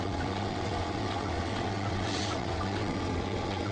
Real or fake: fake